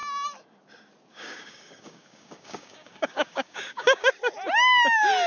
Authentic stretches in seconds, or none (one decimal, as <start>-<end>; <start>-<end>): 0.0-1.1; 4.1-5.3